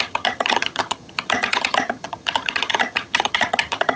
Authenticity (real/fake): fake